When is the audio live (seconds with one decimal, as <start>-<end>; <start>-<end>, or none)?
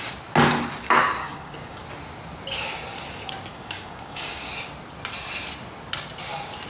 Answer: 0.0-1.2; 1.8-3.5; 4.5-6.7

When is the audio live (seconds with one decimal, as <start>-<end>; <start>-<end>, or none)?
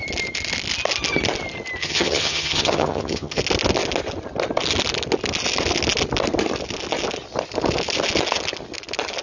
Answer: 0.0-1.8; 3.4-9.2